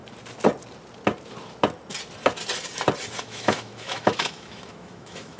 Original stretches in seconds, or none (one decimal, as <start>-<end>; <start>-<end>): 0.0-3.2